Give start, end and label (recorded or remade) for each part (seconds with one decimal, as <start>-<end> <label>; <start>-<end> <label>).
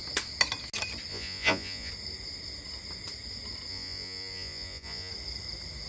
0.0-1.1 recorded; 1.1-1.9 remade; 1.9-3.7 recorded; 3.7-5.1 remade; 5.1-5.9 recorded